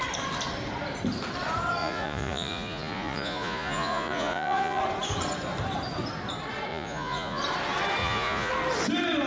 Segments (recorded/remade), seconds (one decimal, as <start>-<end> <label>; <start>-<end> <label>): 0.0-1.8 recorded; 1.8-4.8 remade; 4.8-6.7 recorded; 6.7-7.4 remade; 7.4-8.0 recorded; 8.0-8.5 remade; 8.5-9.3 recorded